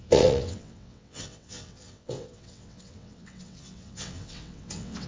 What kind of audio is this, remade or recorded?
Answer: remade